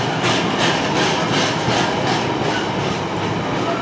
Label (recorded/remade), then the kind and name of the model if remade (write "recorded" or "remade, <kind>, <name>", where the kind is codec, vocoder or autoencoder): recorded